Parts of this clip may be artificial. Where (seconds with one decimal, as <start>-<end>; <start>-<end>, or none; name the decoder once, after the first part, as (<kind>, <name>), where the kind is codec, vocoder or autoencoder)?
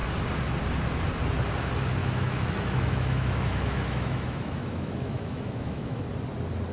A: 2.0-6.0 (autoencoder, DAC-VAE)